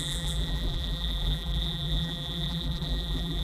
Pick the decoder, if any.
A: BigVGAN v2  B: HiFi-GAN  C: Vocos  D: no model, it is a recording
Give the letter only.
A